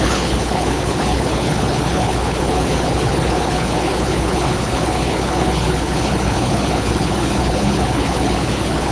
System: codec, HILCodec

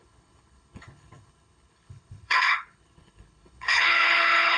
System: codec, HILCodec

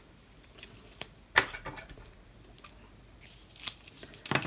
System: none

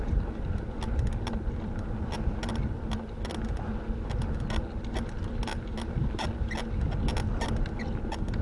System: none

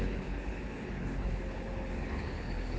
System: codec, HILCodec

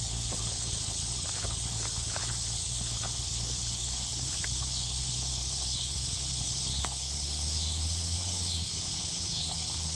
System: codec, HILCodec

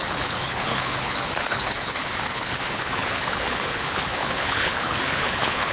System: codec, HILCodec